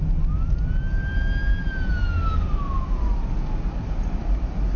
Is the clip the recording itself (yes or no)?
yes